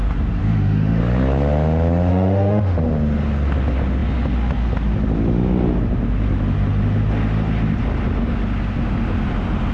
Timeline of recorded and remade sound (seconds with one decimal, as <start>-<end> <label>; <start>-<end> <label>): 0.0-0.4 recorded; 0.4-1.0 remade; 1.0-2.1 recorded; 2.1-2.8 remade; 2.8-9.7 recorded